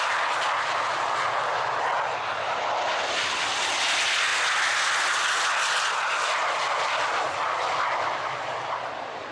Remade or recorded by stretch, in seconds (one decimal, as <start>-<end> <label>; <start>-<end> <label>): 0.0-9.3 recorded